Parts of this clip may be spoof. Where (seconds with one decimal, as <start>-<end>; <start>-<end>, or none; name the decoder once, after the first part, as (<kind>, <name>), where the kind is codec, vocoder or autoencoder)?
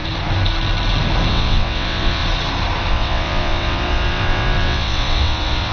1.3-2.2 (vocoder, WaveNeXt); 2.9-5.7